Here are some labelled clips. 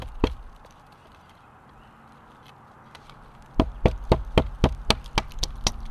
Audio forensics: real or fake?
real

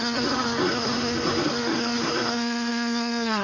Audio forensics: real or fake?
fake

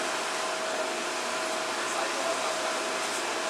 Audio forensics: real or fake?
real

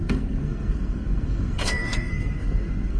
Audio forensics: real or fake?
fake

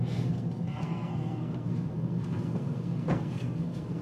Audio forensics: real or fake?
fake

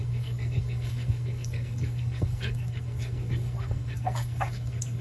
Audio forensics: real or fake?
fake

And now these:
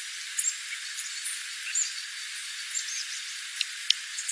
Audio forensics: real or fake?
real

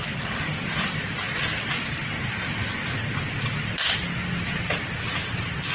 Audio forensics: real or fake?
real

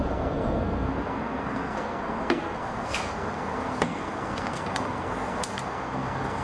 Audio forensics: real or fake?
fake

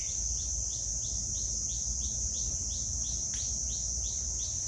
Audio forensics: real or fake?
real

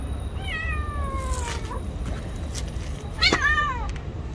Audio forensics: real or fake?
real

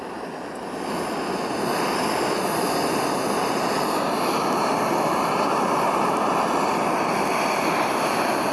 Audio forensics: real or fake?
real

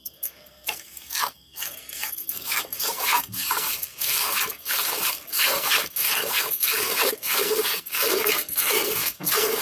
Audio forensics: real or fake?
fake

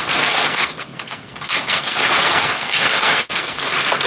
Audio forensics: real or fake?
fake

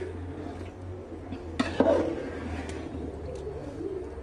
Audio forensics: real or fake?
real